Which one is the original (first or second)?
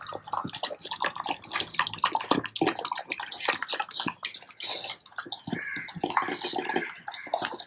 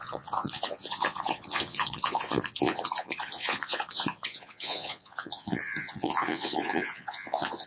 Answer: first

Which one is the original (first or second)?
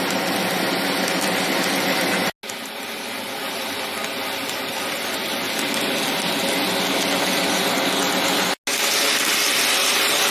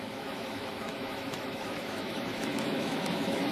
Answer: first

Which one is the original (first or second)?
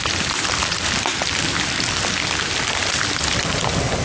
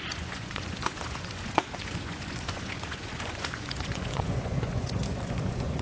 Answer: first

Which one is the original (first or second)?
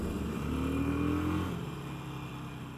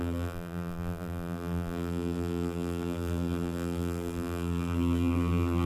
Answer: first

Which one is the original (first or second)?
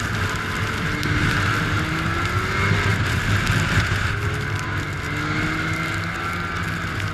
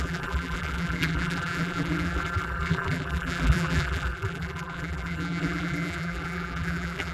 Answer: first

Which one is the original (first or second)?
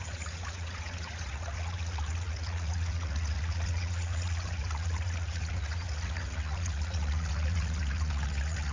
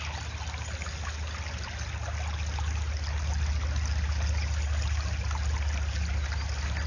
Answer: second